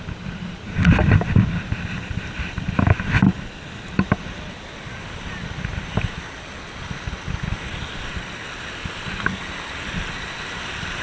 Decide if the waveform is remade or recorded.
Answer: recorded